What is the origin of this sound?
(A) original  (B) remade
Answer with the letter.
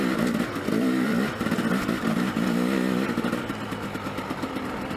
A